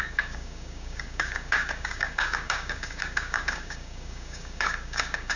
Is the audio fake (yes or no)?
yes